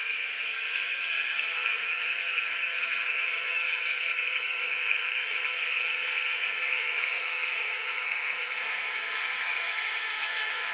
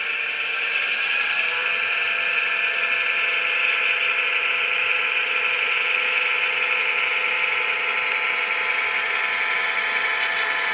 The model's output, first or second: first